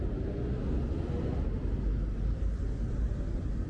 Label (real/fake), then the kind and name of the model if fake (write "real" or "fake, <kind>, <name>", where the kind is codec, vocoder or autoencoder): real